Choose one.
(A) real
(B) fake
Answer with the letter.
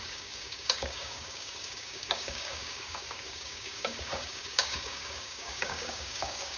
B